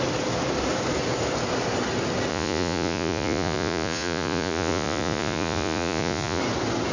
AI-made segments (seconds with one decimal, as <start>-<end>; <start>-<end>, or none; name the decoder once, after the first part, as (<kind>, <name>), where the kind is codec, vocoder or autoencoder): 2.3-6.4 (vocoder, Vocos)